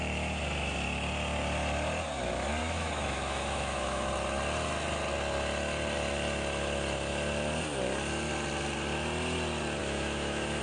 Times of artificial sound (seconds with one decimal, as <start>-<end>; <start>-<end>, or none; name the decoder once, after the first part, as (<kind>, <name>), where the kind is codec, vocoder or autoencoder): 2.6-4.1 (autoencoder, DAC-VAE); 9.8-10.6